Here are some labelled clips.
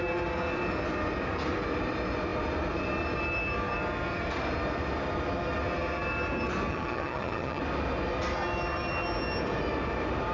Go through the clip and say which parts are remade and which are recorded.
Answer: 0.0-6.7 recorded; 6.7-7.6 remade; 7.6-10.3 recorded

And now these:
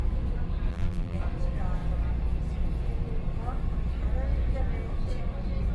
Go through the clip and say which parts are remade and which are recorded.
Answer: 0.0-0.7 recorded; 0.7-1.2 remade; 1.2-5.7 recorded

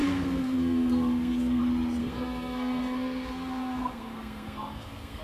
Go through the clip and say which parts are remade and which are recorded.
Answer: 0.0-1.6 remade; 1.6-2.0 recorded; 2.0-5.2 remade

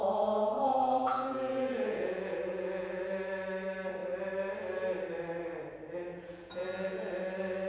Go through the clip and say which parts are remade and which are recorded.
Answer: 0.0-3.0 remade; 3.0-6.1 recorded; 6.1-7.1 remade; 7.1-7.7 recorded

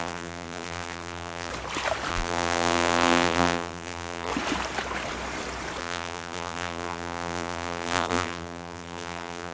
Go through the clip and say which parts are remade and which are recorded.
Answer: 0.0-1.5 remade; 1.5-2.1 recorded; 2.1-4.3 remade; 4.3-5.8 recorded; 5.8-9.5 remade

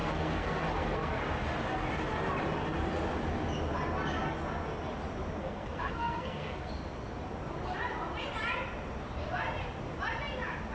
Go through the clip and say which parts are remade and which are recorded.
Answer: 0.0-1.2 remade; 1.2-5.4 recorded; 5.4-6.7 remade; 6.7-10.7 recorded

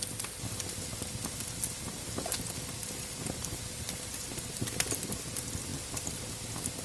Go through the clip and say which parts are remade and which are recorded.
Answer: 0.0-6.8 recorded

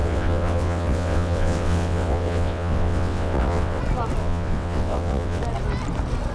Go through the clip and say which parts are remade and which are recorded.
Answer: 0.0-3.8 remade; 3.8-4.2 recorded; 4.2-5.4 remade; 5.4-6.3 recorded